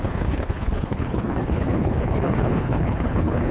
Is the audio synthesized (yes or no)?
yes